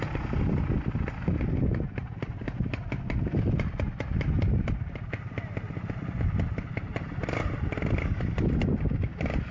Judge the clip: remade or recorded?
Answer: recorded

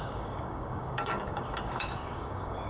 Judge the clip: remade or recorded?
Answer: remade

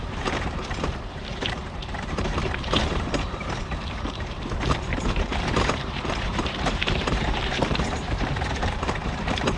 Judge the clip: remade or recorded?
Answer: remade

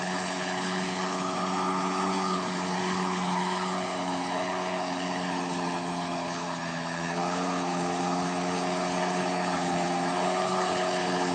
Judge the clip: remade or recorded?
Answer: remade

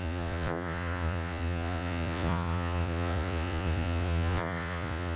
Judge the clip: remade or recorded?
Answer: remade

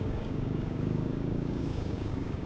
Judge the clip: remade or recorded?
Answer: remade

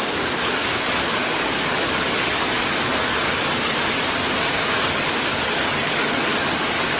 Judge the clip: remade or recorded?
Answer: remade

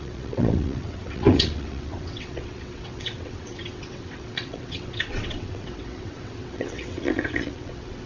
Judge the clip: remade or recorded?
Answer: remade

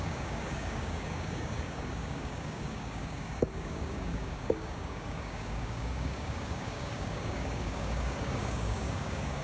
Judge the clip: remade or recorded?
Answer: remade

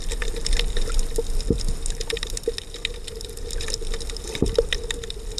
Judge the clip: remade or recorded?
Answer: recorded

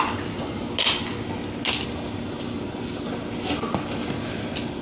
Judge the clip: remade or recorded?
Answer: recorded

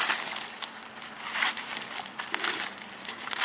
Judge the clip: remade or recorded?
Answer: remade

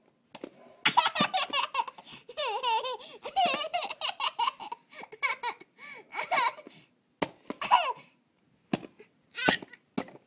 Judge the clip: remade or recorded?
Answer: recorded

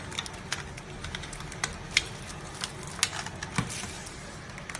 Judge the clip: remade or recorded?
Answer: recorded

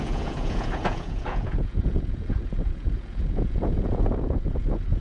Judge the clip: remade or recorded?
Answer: remade